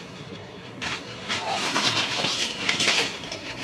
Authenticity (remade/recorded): remade